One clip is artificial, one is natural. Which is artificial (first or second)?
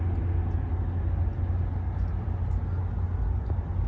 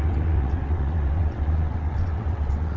second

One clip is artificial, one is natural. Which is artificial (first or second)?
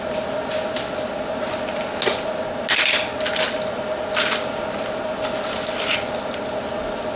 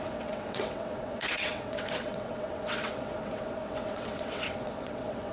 second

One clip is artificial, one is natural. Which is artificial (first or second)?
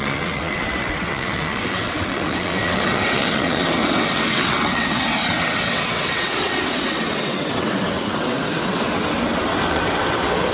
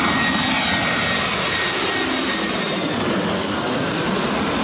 first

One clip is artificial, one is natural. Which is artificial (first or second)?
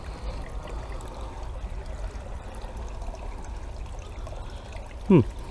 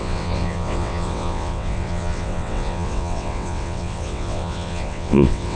second